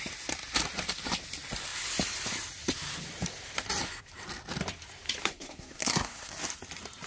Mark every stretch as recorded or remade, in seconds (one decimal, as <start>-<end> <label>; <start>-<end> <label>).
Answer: 0.0-5.2 recorded; 5.2-6.3 remade; 6.3-7.1 recorded